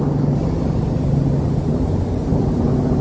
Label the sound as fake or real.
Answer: real